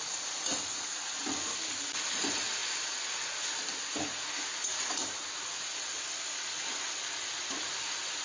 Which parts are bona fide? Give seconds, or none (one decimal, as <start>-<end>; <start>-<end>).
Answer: 0.0-8.2